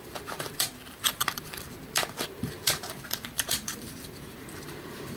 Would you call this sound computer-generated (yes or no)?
yes